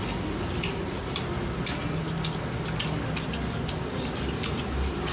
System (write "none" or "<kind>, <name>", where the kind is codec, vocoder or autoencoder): none